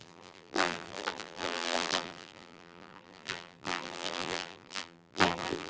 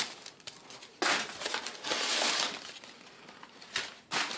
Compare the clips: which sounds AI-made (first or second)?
first